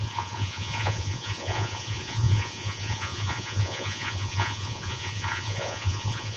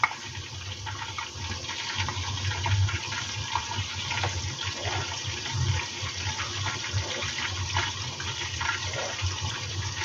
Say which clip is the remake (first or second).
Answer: first